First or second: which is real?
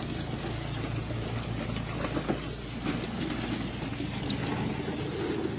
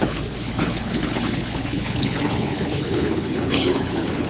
first